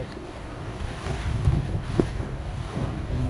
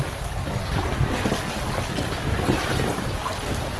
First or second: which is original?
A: second